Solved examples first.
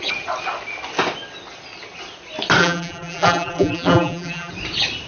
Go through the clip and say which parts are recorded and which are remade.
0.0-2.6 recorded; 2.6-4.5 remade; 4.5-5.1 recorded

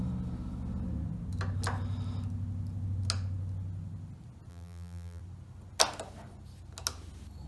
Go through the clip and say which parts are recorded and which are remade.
0.0-4.5 recorded; 4.5-5.2 remade; 5.2-7.5 recorded

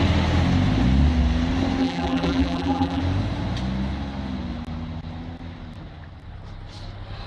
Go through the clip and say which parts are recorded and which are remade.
0.0-1.8 recorded; 1.8-3.0 remade; 3.0-7.3 recorded

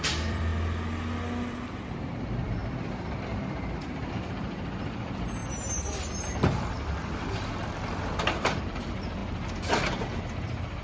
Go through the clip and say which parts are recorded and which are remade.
0.0-0.5 remade; 0.5-1.5 recorded; 1.5-10.8 remade